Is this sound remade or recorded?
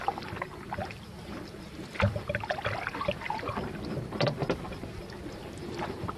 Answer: recorded